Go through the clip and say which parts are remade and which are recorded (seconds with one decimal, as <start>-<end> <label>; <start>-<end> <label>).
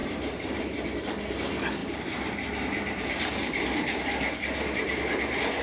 0.0-0.8 remade; 0.8-1.8 recorded; 1.8-5.6 remade